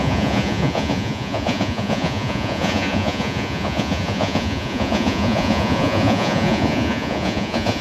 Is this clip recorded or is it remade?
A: remade